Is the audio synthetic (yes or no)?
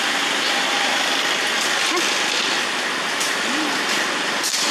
no